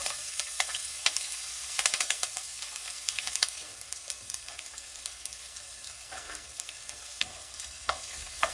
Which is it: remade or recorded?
remade